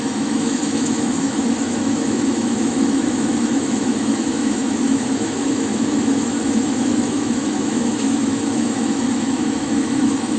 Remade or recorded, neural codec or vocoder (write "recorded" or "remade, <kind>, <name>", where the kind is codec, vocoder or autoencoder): remade, autoencoder, DAC-VAE